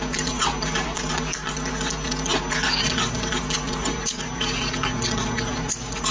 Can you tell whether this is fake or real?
real